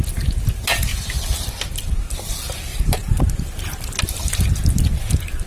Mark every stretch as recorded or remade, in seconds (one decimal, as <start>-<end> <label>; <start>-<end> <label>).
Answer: 0.0-2.7 recorded; 2.7-4.0 remade; 4.0-5.5 recorded